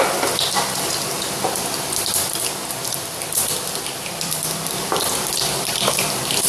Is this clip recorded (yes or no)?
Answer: no